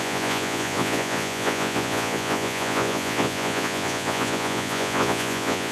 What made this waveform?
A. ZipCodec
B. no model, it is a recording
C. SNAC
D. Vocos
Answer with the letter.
D